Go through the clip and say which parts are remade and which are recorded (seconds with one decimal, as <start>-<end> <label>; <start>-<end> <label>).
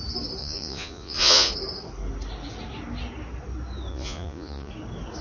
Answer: 0.0-0.4 recorded; 0.4-1.5 remade; 1.5-3.9 recorded; 3.9-4.7 remade; 4.7-5.2 recorded